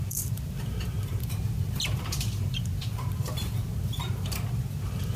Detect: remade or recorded remade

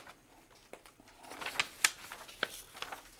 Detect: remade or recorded recorded